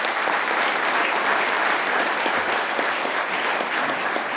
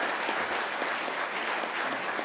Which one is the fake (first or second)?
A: first